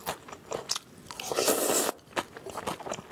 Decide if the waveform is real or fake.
real